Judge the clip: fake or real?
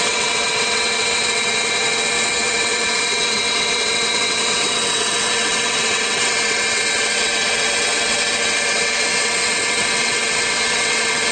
fake